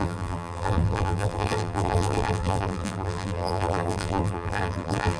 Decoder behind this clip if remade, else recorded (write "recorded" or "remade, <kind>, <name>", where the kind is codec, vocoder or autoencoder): remade, vocoder, BigVGAN v2